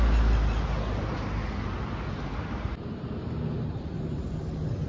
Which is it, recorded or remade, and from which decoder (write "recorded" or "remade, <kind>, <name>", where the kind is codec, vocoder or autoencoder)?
recorded